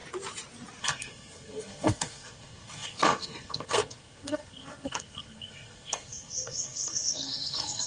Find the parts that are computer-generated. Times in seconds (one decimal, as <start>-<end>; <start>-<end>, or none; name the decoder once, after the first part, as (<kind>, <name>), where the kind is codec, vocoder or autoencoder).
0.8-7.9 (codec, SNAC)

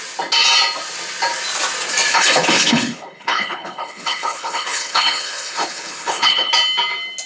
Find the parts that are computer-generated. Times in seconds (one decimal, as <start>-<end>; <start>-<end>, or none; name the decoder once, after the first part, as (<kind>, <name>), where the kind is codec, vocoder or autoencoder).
2.1-6.5 (codec, HILCodec)

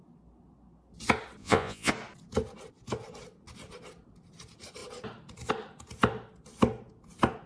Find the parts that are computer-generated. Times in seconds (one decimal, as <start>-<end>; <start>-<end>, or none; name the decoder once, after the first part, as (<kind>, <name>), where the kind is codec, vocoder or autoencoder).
1.4-1.9 (vocoder, Vocos)

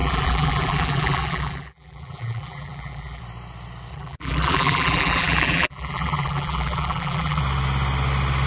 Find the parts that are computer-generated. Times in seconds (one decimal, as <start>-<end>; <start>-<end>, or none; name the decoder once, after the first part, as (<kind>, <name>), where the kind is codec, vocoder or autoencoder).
0.0-3.2 (vocoder, BigVGAN v2); 3.9-7.4